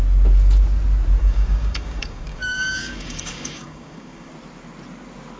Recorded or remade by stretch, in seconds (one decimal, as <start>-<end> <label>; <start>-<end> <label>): 0.0-1.2 recorded; 1.2-4.3 remade; 4.3-5.4 recorded